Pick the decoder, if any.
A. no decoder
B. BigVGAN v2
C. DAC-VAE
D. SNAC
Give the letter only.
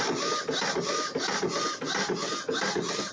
A